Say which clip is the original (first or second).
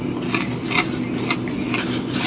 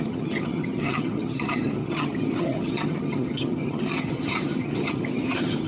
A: first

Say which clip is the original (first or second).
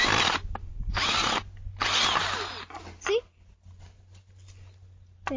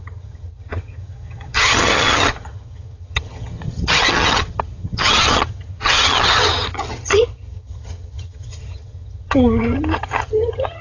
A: first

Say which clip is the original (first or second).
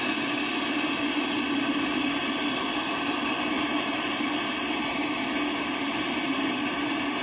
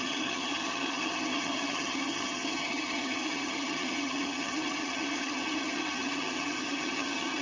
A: first